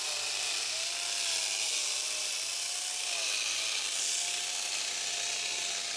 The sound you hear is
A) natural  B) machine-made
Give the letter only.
A